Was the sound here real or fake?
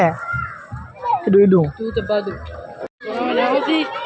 real